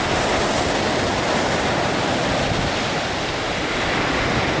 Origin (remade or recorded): recorded